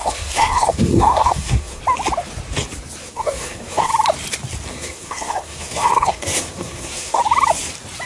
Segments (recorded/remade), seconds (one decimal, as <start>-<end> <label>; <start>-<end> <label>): 0.0-1.8 remade; 1.8-3.0 recorded; 3.0-3.9 remade; 3.9-4.7 recorded; 4.7-7.2 remade; 7.2-8.1 recorded